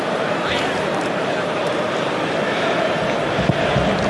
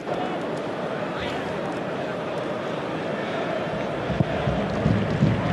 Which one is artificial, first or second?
first